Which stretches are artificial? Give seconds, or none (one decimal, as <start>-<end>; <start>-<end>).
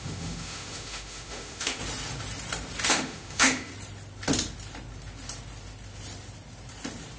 0.0-1.8; 2.9-3.7